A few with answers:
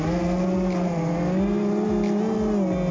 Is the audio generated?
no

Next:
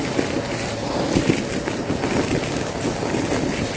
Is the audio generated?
no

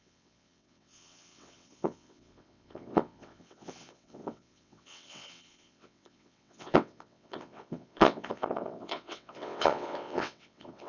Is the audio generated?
yes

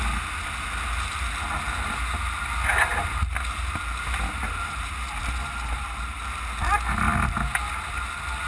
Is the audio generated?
no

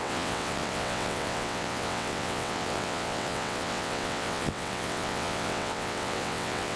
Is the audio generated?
yes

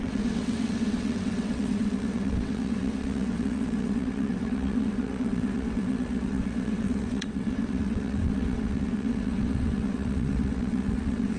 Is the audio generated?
yes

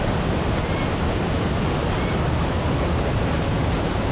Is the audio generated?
no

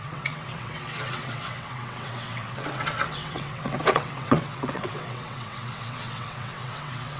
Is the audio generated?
yes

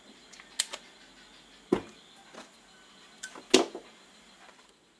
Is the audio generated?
no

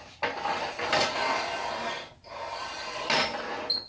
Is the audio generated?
no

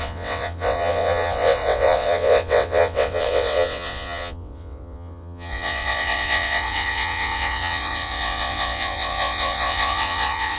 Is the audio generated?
yes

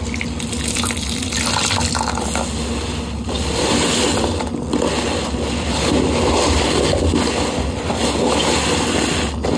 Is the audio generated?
no